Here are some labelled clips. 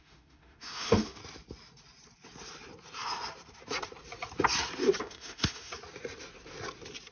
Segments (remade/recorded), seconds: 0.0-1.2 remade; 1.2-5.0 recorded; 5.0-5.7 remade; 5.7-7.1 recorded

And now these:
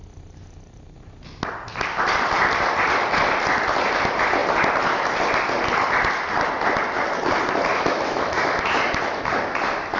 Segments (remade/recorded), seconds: 0.0-7.7 recorded; 7.7-9.0 remade; 9.0-10.0 recorded

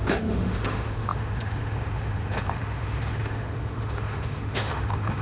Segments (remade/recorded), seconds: 0.0-5.2 remade

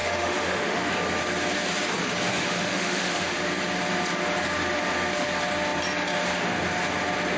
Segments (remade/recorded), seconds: 0.0-0.9 remade; 0.9-2.3 recorded; 2.3-3.4 remade; 3.4-7.4 recorded

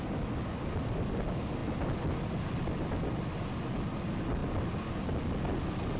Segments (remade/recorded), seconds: 0.0-6.0 recorded

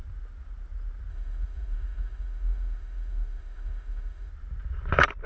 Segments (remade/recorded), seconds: 0.0-1.1 recorded; 1.1-4.3 remade; 4.3-5.3 recorded